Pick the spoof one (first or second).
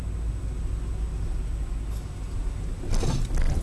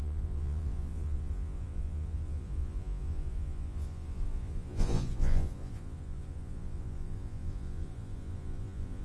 second